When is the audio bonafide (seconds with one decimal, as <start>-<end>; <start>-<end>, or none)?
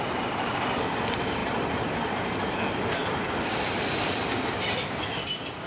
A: 0.0-5.7